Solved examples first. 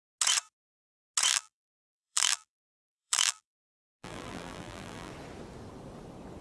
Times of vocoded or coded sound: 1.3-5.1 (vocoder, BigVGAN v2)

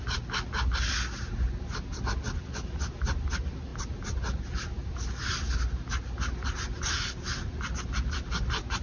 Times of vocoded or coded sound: none

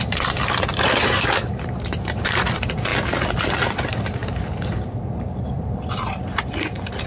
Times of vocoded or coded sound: 0.0-2.9 (vocoder, BigVGAN v2); 3.6-7.1